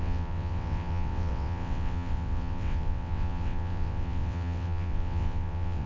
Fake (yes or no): yes